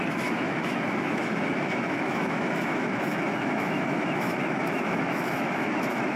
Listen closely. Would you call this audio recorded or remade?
remade